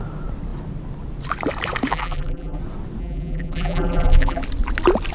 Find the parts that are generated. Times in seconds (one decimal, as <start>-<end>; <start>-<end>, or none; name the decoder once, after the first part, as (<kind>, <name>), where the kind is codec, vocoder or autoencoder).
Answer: 1.9-2.6 (vocoder, BigVGAN v2); 3.0-4.4